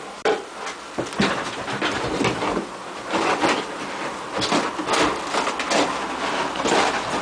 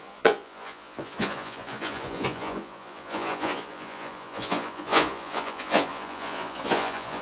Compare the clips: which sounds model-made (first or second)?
second